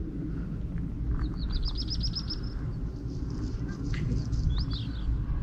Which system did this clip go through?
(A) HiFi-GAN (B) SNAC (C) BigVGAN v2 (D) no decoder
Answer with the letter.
D